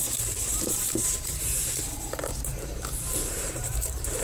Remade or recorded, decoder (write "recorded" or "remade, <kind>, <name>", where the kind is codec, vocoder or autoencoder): remade, vocoder, BigVGAN v2